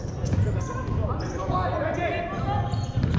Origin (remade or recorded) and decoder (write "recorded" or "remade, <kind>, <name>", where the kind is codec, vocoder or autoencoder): recorded